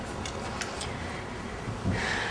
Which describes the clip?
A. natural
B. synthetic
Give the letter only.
A